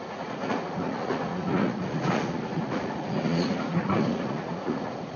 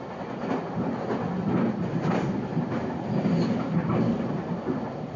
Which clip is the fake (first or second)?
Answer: first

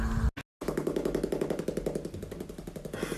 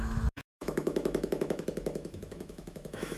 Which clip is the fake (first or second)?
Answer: second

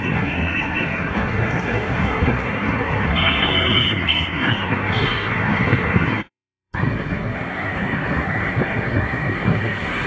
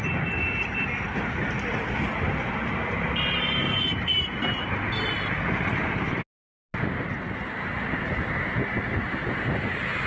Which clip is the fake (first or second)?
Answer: first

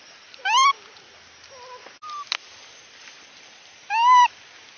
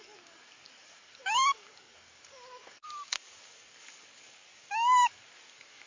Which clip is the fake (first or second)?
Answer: second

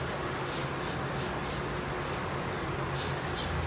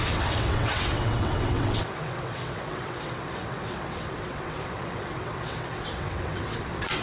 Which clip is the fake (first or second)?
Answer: second